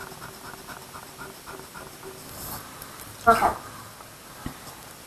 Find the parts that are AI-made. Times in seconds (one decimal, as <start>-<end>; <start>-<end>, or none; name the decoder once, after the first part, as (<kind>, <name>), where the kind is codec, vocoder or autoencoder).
none